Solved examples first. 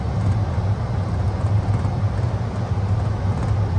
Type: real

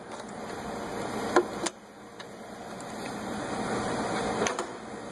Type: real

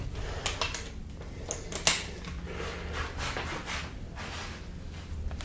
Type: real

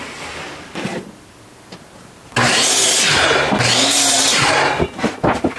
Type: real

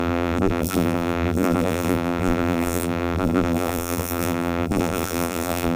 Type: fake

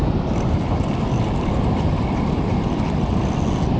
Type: real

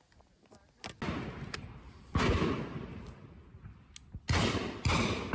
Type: real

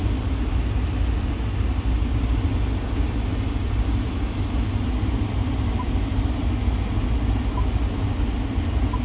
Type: real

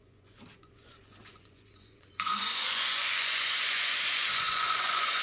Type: fake